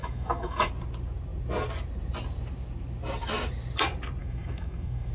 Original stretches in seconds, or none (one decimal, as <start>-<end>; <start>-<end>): 0.7-4.2